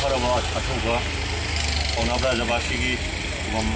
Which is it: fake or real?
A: real